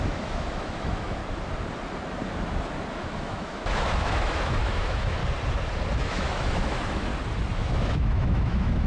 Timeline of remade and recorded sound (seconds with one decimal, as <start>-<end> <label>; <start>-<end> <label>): 0.0-1.2 remade; 1.2-2.9 recorded; 2.9-5.2 remade; 5.2-6.0 recorded; 6.0-7.1 remade; 7.1-7.8 recorded; 7.8-8.9 remade

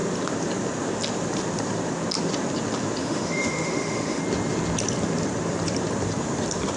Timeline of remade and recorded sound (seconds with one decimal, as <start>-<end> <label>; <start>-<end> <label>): 0.0-3.0 recorded; 3.0-4.2 remade; 4.2-6.8 recorded

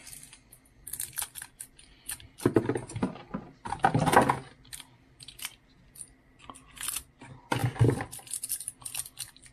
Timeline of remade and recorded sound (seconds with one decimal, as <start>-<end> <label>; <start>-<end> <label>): 0.0-9.5 recorded